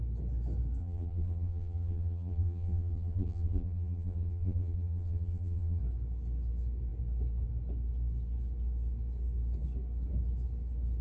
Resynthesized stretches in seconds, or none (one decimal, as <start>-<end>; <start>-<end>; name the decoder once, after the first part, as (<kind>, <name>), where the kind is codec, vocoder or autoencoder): 0.8-5.8 (vocoder, BigVGAN v2)